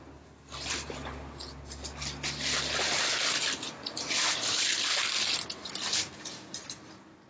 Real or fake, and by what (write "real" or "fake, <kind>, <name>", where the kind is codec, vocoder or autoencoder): real